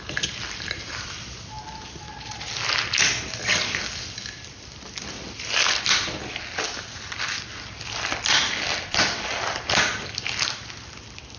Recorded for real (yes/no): yes